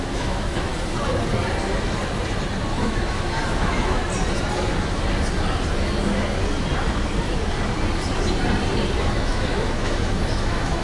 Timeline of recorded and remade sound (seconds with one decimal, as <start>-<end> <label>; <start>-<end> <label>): 0.0-0.7 remade; 0.7-2.7 recorded; 2.7-4.0 remade; 4.0-9.0 recorded; 9.0-10.8 remade